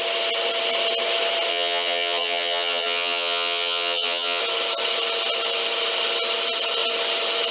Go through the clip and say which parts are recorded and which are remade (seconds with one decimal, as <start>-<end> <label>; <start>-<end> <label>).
0.0-1.5 recorded; 1.5-4.4 remade; 4.4-7.5 recorded